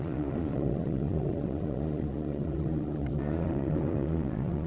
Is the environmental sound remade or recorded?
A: remade